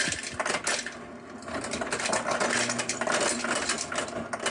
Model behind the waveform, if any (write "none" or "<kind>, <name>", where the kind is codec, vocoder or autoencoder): none